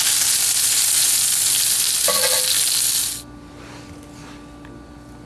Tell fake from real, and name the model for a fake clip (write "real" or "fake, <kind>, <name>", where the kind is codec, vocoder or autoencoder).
real